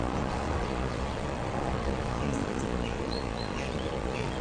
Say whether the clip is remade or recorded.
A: remade